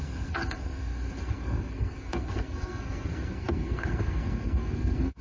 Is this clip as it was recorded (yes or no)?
no